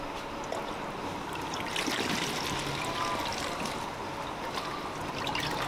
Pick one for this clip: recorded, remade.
recorded